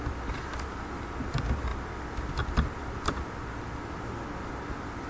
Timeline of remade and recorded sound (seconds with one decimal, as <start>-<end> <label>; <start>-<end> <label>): 0.0-5.1 recorded